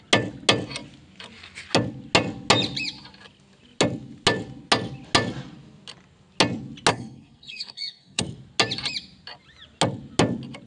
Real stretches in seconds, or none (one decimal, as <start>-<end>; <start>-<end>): 0.0-6.9; 8.2-10.7